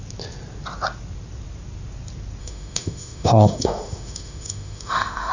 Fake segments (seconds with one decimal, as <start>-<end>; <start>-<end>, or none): 2.4-5.3